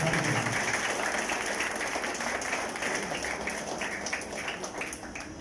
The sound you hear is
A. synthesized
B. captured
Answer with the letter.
B